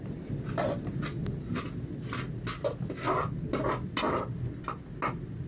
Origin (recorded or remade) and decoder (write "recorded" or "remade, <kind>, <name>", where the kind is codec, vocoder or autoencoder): recorded